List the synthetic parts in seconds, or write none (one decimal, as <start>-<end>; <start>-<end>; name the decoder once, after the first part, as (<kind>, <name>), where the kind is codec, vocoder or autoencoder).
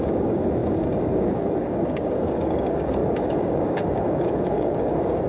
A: 0.0-5.3 (codec, DAC)